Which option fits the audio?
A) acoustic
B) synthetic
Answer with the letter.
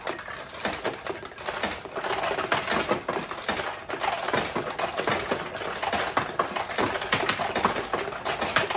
A